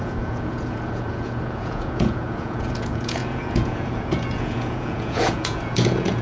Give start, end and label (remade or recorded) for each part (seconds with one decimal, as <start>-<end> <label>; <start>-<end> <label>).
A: 0.0-6.2 remade